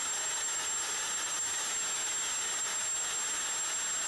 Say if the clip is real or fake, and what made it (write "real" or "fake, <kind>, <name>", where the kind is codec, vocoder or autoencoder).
real